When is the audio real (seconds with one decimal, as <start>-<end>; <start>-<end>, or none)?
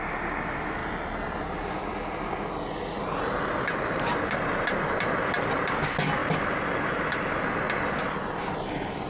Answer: 0.0-9.1